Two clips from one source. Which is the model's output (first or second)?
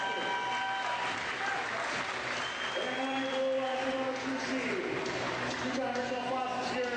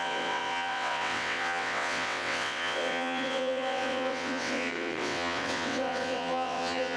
second